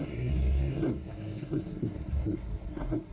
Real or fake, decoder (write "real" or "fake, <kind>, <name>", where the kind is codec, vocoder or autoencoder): fake, codec, SNAC